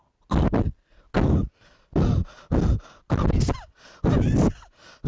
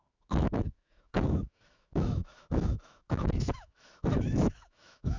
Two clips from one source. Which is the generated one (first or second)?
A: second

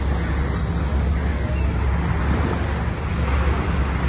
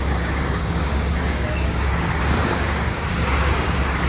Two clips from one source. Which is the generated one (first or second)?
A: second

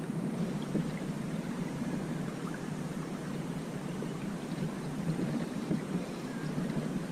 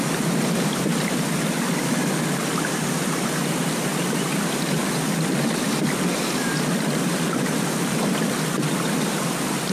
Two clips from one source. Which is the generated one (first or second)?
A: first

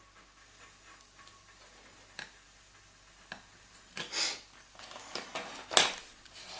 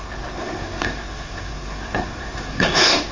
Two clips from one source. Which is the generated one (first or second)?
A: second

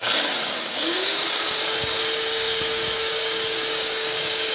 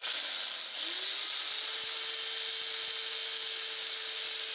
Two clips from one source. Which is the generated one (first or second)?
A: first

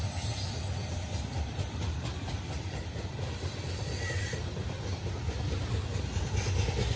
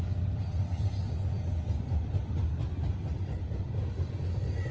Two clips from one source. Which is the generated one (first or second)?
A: first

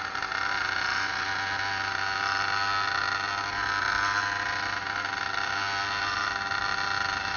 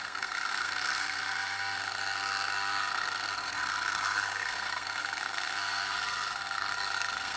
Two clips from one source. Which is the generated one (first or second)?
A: second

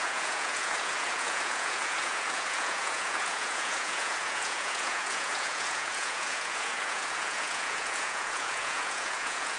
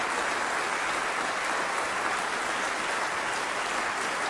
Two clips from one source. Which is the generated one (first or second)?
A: first